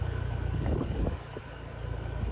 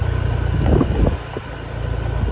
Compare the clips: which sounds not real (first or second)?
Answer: first